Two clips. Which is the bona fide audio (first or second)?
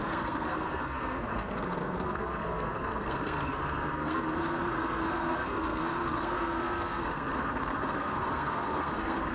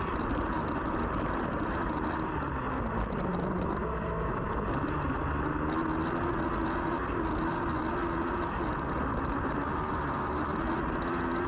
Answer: second